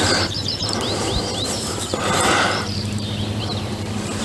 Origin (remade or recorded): remade